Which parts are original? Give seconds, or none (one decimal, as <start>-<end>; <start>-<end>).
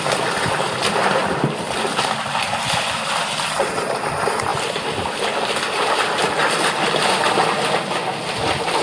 0.0-8.8